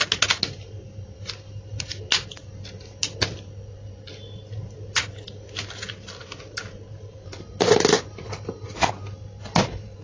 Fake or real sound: real